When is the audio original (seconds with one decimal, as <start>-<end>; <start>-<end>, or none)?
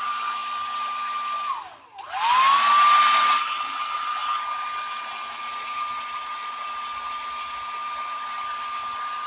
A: 0.0-9.3